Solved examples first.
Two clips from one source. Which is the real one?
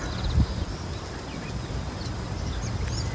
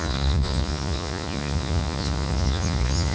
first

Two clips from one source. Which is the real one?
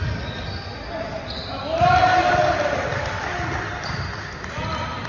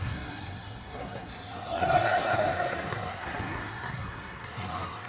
first